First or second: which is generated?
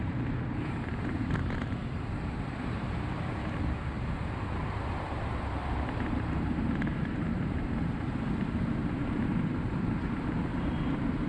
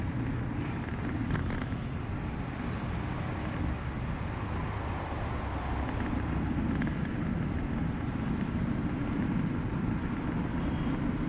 first